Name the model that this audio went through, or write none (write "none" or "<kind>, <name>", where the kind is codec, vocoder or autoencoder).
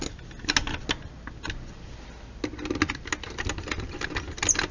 none